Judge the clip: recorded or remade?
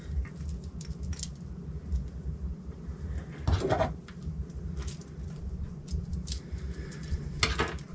recorded